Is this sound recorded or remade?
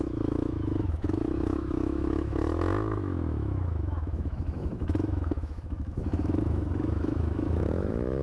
remade